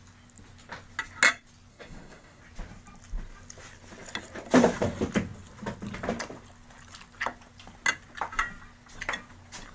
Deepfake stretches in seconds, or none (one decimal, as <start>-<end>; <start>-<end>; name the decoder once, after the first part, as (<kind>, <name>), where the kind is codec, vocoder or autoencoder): 1.7-2.4 (codec, SNAC)